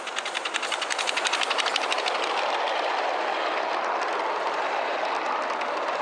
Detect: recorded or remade recorded